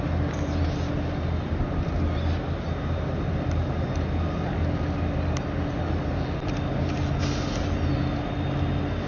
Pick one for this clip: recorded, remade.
recorded